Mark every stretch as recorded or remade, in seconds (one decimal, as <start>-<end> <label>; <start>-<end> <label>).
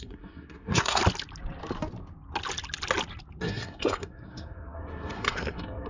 0.0-1.0 remade; 1.0-3.4 recorded; 3.4-5.9 remade